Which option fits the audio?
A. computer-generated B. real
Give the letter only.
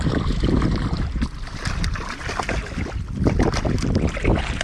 A